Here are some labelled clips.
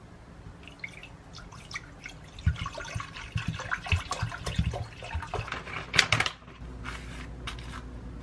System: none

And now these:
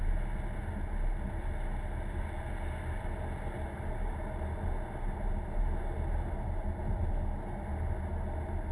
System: none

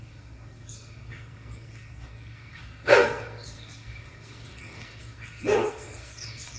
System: codec, SNAC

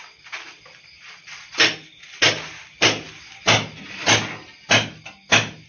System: none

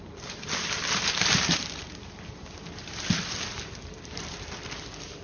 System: none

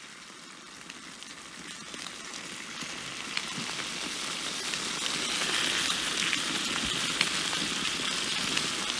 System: none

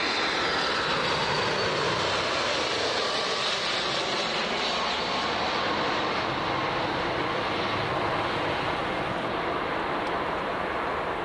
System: none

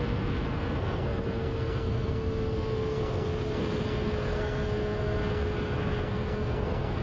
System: codec, SNAC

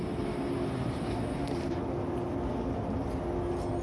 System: none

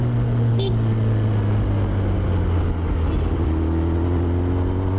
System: none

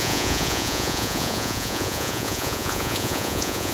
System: vocoder, Vocos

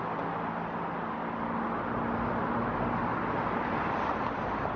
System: none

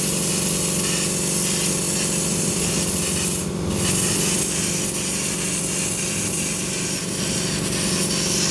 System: none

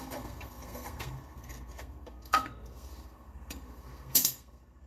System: codec, SNAC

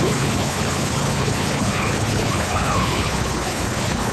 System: codec, HILCodec